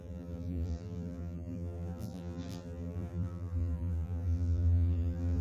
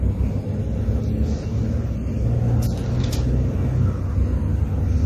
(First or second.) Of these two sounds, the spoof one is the first